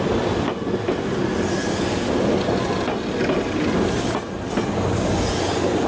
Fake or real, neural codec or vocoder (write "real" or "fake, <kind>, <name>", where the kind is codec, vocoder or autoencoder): real